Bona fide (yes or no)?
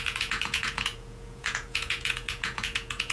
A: no